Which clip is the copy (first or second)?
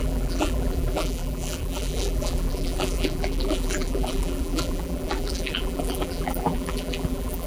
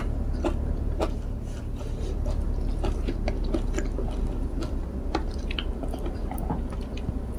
first